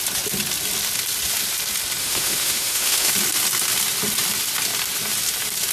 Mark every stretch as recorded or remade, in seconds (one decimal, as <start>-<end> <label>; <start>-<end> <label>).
0.0-2.0 recorded; 2.0-3.1 remade; 3.1-5.7 recorded